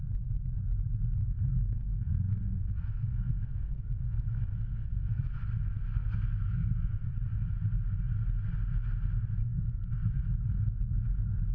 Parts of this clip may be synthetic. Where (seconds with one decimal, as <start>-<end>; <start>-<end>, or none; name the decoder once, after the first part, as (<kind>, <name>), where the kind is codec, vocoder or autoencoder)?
1.2-5.2 (codec, SNAC); 5.9-7.1; 9.4-10.2